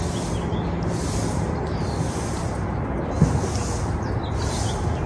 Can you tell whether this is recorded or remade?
recorded